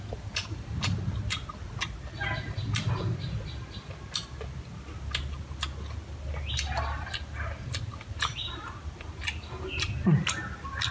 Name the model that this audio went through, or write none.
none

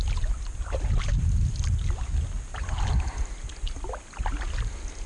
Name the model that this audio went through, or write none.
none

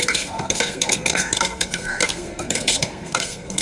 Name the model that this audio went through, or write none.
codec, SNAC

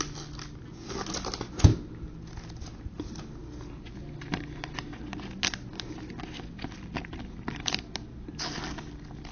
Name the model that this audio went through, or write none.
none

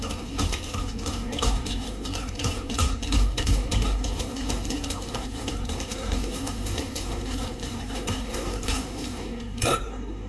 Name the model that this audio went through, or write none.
codec, SNAC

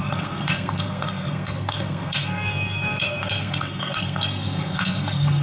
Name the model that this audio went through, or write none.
codec, SNAC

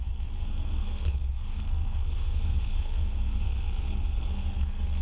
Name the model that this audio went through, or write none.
codec, SNAC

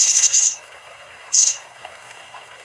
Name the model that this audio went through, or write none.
codec, SNAC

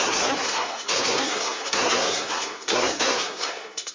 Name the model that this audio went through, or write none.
codec, SNAC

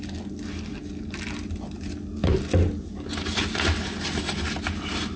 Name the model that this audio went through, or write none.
none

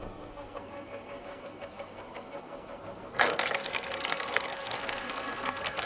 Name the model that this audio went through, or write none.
codec, SNAC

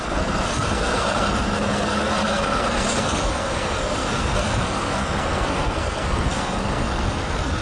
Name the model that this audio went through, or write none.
codec, SNAC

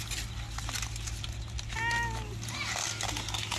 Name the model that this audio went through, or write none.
none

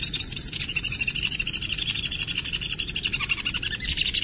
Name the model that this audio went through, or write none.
none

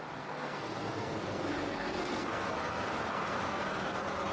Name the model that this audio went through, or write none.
codec, SNAC